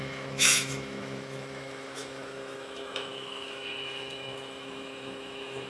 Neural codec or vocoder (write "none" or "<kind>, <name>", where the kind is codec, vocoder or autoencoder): autoencoder, DAC-VAE